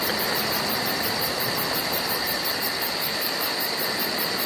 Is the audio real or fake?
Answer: fake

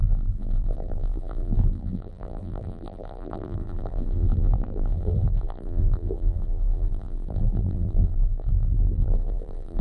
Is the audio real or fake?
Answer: fake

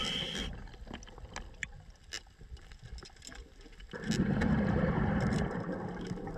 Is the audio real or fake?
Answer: real